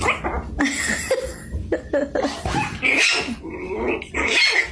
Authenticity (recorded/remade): recorded